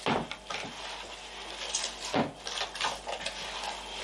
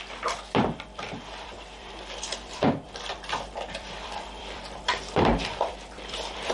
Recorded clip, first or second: first